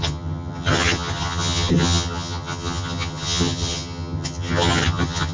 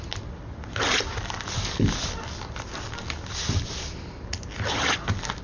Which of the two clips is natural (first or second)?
second